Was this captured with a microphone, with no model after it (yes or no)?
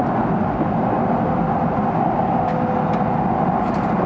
yes